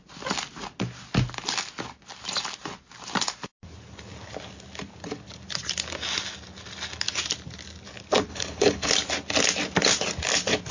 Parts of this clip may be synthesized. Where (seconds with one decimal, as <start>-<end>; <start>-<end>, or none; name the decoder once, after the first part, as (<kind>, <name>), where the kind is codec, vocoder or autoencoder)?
8.3-8.9 (codec, HILCodec)